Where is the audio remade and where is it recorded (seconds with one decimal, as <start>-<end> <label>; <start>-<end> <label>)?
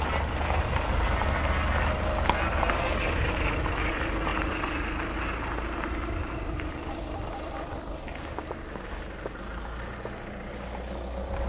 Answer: 0.0-11.5 recorded